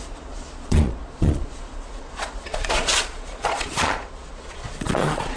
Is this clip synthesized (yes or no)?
yes